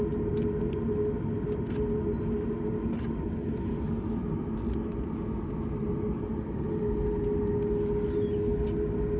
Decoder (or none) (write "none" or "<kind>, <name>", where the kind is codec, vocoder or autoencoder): none